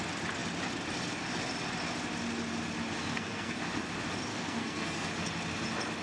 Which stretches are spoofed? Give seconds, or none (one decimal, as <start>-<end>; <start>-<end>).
3.0-3.6; 4.3-5.1